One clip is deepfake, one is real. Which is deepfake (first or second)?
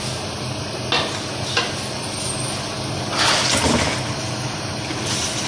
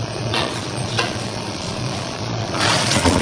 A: second